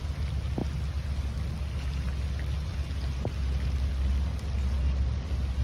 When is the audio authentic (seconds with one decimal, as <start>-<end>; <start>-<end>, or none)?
0.0-5.6